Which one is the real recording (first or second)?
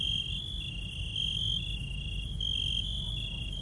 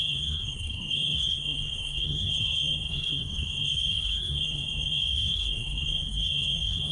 first